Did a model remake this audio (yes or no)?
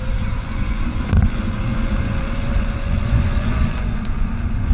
yes